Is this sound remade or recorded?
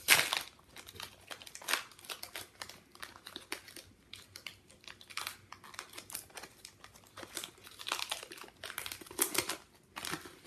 recorded